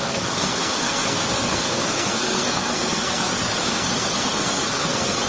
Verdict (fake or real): fake